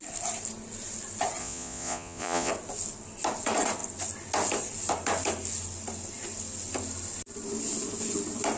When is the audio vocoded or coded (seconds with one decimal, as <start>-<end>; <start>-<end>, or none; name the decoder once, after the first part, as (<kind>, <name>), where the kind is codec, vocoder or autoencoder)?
1.4-2.5 (vocoder, Vocos)